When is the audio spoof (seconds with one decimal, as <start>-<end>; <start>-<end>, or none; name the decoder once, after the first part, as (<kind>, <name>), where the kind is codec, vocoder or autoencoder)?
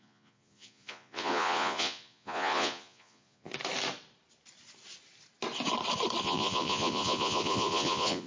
0.0-3.5 (vocoder, Vocos); 6.2-8.3